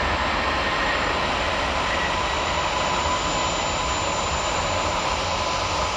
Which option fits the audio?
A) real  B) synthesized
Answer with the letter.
A